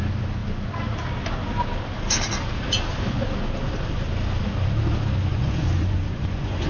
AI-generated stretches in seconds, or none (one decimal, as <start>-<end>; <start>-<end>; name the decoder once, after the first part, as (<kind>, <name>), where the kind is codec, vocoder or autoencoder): 5.3-6.7 (vocoder, Vocos)